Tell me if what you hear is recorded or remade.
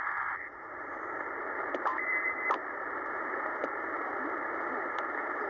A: remade